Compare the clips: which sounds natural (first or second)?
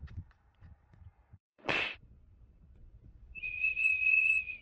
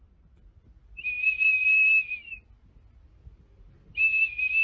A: second